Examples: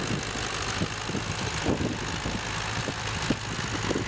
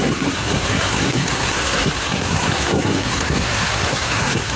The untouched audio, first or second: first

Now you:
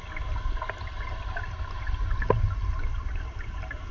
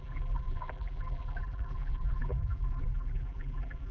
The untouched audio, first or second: first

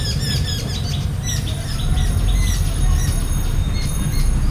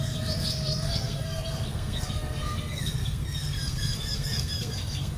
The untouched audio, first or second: first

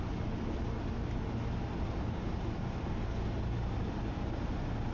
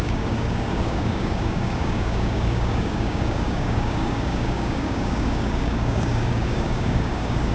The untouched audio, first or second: first